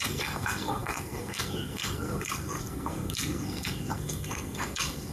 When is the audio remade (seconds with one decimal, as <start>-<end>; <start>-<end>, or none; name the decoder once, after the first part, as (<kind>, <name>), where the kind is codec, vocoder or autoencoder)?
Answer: 0.0-5.1 (codec, SNAC)